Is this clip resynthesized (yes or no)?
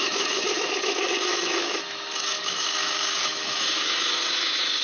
yes